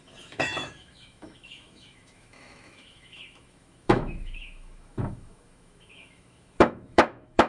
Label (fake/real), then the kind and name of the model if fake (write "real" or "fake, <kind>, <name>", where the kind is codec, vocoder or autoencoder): fake, autoencoder, DAC-VAE